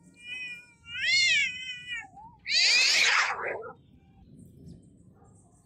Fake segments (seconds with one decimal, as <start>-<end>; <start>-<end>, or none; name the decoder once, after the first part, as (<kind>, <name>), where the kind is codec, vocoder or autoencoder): 1.4-4.4 (vocoder, BigVGAN v2)